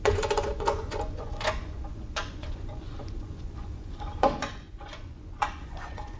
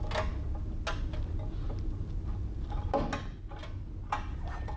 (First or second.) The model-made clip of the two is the first